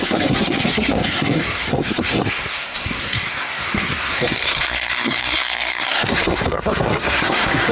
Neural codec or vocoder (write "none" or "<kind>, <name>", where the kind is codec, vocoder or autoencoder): codec, SNAC